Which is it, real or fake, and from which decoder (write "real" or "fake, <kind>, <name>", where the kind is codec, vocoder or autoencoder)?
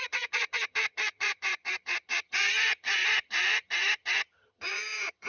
fake, vocoder, HiFi-GAN